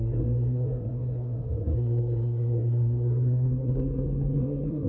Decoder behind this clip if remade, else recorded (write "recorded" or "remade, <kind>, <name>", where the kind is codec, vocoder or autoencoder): remade, codec, SNAC